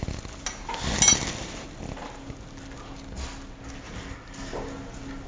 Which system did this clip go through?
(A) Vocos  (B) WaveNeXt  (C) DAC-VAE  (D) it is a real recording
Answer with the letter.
D